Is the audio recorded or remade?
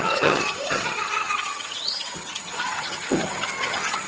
remade